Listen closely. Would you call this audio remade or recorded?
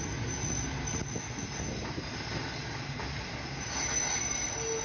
recorded